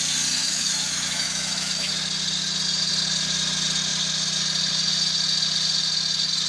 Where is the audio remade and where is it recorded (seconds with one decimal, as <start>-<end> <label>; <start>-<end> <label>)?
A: 0.0-0.4 recorded; 0.4-1.9 remade; 1.9-6.5 recorded